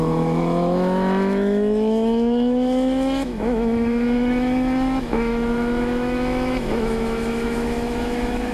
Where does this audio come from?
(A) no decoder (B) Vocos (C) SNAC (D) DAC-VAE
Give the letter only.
D